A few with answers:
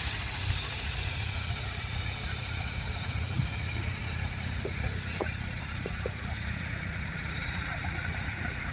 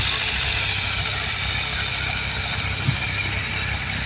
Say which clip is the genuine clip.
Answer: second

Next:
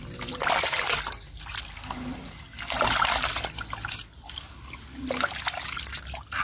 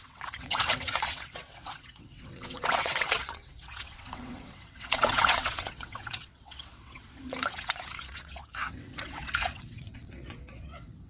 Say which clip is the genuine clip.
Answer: first